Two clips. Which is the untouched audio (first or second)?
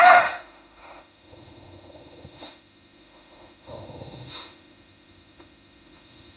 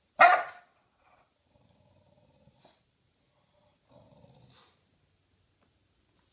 second